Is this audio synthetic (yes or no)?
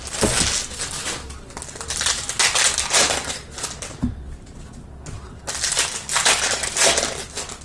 no